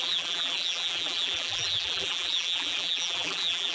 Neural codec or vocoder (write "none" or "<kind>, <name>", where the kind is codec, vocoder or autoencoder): vocoder, BigVGAN v2